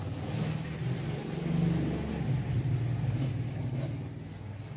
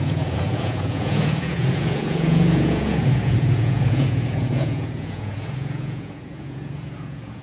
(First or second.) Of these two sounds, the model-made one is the second